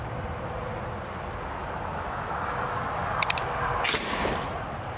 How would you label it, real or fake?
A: real